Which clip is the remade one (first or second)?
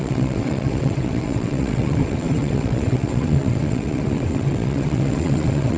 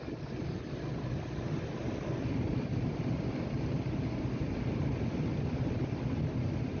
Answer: first